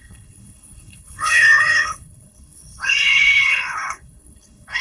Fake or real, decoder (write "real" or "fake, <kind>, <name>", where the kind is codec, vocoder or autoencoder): fake, codec, HILCodec